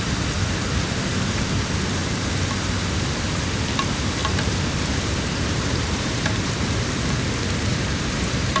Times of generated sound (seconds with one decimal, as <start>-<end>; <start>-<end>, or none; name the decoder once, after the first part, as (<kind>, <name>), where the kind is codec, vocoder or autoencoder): 4.2-6.5 (vocoder, BigVGAN v2); 7.7-8.6